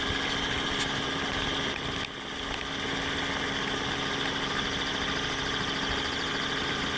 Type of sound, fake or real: real